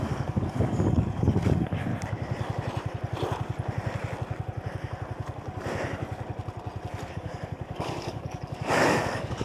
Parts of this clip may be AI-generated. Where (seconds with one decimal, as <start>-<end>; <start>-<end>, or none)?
0.0-1.9; 7.1-9.4